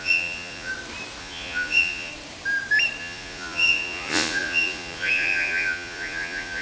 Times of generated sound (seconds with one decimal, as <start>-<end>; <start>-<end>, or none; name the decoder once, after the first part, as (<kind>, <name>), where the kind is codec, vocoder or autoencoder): 0.0-0.7 (vocoder, Vocos); 1.2-2.1; 3.0-6.6